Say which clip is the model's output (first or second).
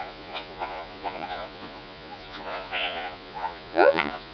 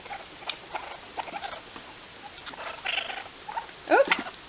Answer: first